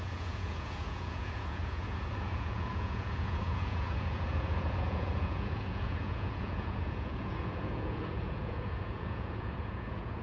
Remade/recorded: remade